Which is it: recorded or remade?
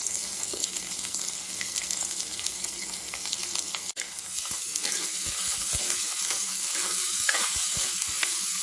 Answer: remade